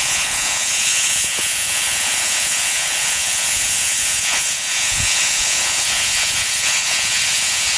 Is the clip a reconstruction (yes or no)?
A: yes